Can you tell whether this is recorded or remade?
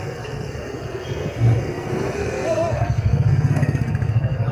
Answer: remade